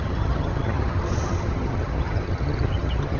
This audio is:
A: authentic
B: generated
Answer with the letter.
B